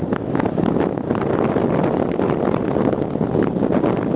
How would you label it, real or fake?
real